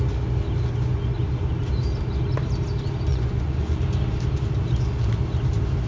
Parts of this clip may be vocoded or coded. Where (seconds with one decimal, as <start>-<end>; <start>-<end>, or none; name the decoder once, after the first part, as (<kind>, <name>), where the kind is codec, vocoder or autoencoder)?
3.1-3.8 (vocoder, Vocos)